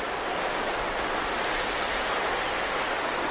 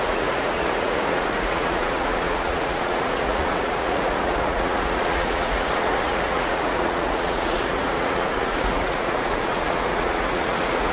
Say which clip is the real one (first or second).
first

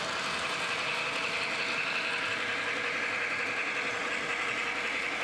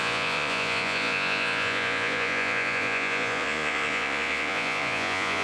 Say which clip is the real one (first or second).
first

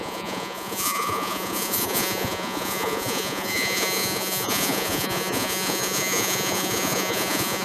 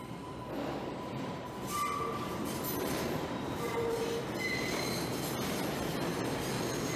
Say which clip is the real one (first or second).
second